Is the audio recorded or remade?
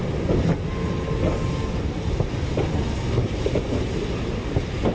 recorded